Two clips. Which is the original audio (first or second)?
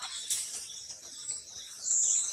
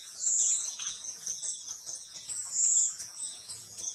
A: first